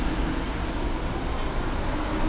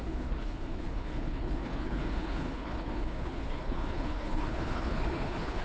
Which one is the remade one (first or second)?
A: second